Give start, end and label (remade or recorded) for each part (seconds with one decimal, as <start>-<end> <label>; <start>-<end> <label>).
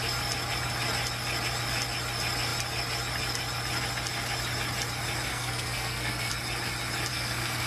0.0-5.3 recorded; 5.3-6.3 remade; 6.3-7.1 recorded; 7.1-7.7 remade